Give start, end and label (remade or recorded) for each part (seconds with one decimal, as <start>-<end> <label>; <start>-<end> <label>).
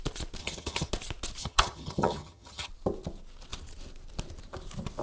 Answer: 0.0-0.4 recorded; 0.4-0.9 remade; 0.9-1.4 recorded; 1.4-2.7 remade; 2.7-5.0 recorded